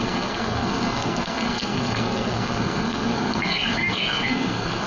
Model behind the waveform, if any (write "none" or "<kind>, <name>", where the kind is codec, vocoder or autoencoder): codec, SNAC